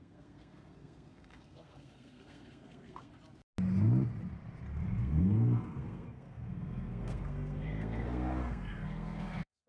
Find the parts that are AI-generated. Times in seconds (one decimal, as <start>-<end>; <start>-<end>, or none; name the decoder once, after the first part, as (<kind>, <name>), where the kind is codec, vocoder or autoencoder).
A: 0.0-3.1 (codec, SNAC); 5.0-9.7